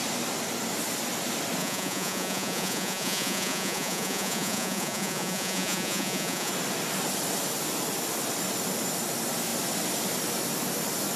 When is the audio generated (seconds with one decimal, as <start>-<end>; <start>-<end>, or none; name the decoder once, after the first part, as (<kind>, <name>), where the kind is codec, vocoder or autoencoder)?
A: 1.6-6.5 (vocoder, Vocos)